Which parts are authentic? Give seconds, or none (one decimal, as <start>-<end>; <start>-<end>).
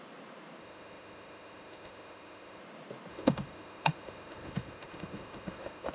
0.0-0.6; 2.6-3.1